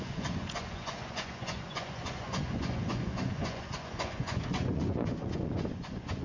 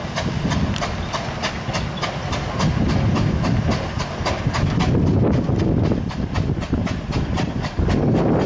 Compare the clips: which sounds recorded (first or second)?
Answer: second